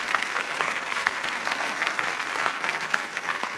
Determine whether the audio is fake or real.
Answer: fake